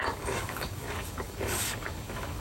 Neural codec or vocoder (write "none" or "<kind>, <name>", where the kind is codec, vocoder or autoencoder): codec, DAC